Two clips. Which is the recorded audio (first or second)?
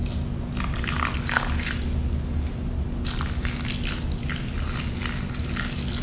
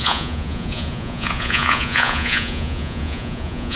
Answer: first